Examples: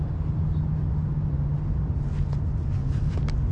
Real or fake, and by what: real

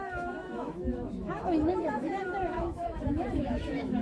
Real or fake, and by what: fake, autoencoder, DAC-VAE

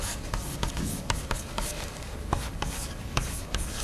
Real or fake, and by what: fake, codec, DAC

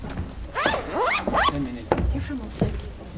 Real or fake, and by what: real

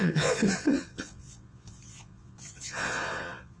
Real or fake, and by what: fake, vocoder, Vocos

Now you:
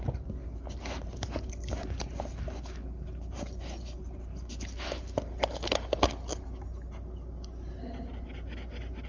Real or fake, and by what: real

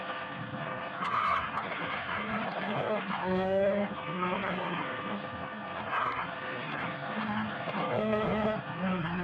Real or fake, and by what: fake, codec, SNAC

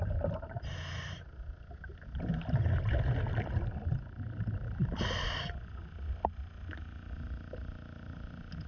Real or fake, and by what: real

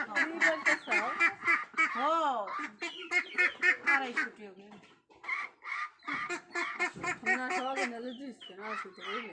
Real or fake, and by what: real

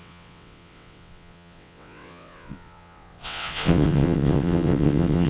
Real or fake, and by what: fake, vocoder, WaveNeXt